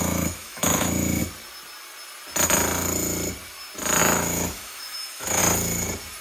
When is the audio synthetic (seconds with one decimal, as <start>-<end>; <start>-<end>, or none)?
0.0-1.2; 4.0-5.4